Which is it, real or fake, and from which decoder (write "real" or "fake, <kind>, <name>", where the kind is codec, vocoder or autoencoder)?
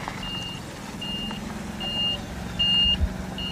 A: real